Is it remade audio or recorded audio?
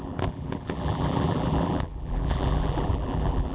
remade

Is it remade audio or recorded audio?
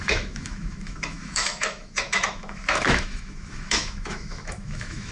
remade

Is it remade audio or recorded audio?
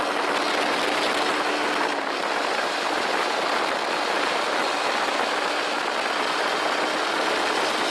recorded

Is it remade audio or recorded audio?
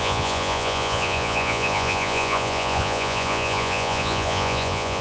remade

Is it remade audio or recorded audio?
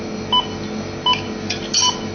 recorded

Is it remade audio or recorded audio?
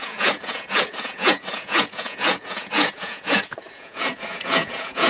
remade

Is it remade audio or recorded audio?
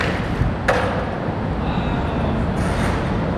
recorded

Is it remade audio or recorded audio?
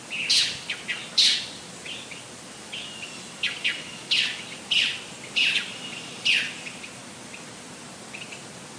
recorded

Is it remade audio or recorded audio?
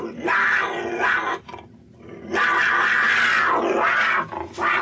recorded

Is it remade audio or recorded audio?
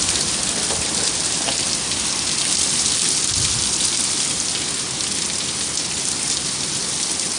recorded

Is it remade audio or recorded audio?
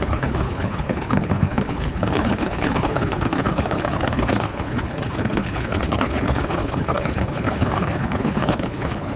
remade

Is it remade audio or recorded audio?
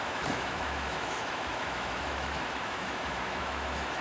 remade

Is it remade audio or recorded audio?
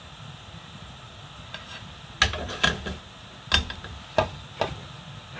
recorded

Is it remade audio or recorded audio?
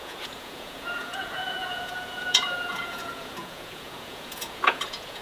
remade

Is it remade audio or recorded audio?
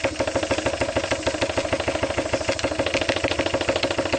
recorded